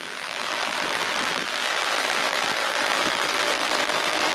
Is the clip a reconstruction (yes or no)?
yes